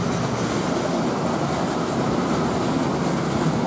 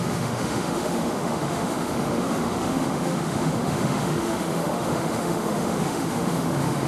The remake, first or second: second